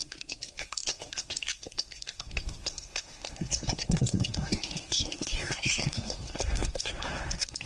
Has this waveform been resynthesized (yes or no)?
yes